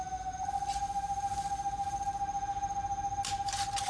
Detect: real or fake real